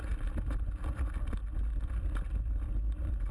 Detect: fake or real real